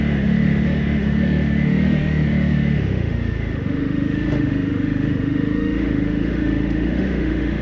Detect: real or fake fake